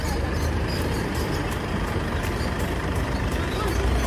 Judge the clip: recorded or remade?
remade